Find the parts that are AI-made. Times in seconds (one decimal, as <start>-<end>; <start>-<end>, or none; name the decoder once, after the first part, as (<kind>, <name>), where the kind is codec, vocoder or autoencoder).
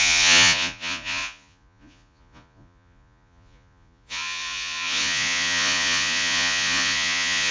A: 0.0-7.5 (vocoder, Vocos)